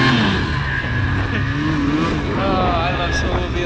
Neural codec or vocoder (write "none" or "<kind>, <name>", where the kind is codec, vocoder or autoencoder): none